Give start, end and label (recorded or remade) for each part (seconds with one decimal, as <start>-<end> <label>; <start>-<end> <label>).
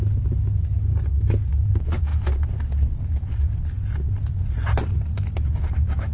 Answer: 0.0-6.1 recorded